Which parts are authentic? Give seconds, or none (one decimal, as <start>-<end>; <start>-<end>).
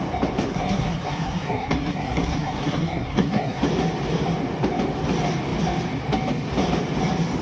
0.0-0.5; 3.6-7.4